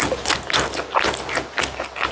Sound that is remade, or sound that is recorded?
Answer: recorded